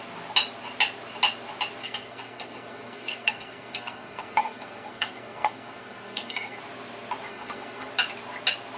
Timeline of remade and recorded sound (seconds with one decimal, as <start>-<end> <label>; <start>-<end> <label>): 0.0-1.8 recorded; 1.8-6.6 remade; 6.6-7.3 recorded; 7.3-7.9 remade; 7.9-8.8 recorded